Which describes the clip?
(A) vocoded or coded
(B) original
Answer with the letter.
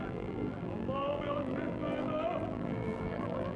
A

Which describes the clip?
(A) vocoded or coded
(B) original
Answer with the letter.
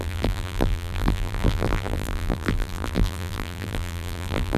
A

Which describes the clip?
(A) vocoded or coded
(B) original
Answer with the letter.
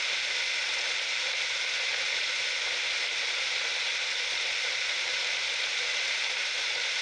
B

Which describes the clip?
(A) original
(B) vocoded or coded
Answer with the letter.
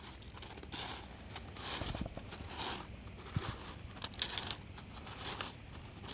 A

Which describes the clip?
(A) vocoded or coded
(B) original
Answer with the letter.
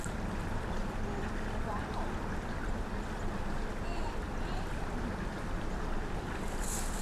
A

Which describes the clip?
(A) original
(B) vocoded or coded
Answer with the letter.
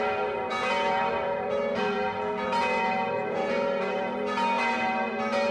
B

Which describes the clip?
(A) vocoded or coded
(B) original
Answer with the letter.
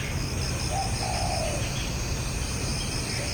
B